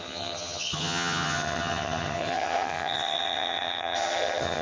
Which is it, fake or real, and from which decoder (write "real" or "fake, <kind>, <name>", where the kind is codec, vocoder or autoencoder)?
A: fake, vocoder, HiFi-GAN